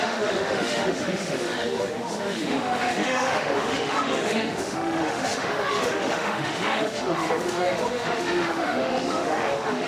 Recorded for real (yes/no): no